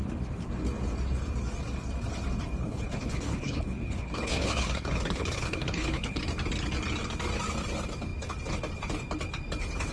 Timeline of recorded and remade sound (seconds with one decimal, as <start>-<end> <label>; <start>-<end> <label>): 0.0-2.6 recorded; 2.6-6.2 remade; 6.2-9.9 recorded